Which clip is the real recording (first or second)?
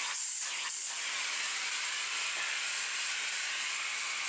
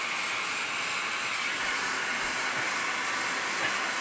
second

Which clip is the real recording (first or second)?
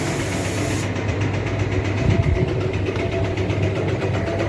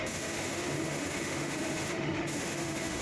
first